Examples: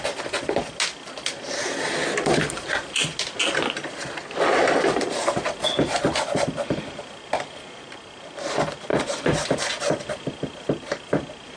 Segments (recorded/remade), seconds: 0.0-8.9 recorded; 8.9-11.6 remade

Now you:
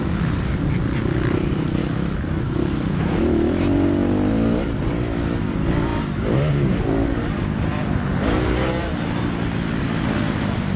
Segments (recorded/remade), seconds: 0.0-1.8 recorded; 1.8-3.6 remade; 3.6-10.8 recorded

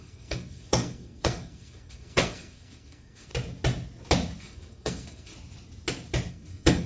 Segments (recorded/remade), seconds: 0.0-3.3 remade; 3.3-4.4 recorded; 4.4-5.3 remade; 5.3-6.3 recorded; 6.3-6.9 remade

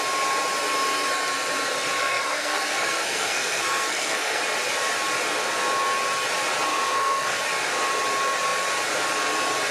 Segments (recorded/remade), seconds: 0.0-2.0 recorded; 2.0-4.4 remade; 4.4-6.7 recorded; 6.7-7.4 remade; 7.4-9.7 recorded

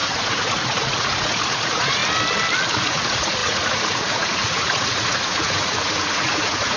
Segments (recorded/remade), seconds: 0.0-2.0 remade; 2.0-2.7 recorded; 2.7-6.8 remade